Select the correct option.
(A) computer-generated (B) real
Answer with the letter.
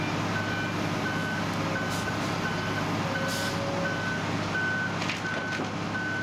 B